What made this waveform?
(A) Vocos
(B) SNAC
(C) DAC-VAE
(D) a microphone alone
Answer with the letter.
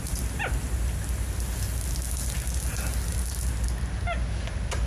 D